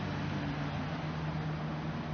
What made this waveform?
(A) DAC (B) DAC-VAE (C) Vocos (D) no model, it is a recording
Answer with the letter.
D